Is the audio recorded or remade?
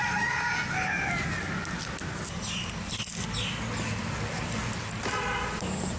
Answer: recorded